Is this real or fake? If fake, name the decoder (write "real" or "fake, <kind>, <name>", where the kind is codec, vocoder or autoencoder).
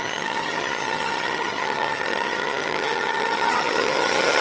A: fake, vocoder, HiFi-GAN